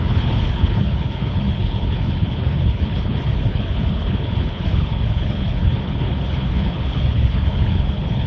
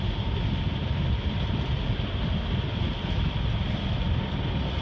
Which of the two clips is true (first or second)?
second